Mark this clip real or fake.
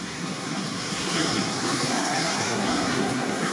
fake